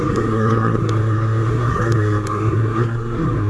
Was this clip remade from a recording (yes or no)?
yes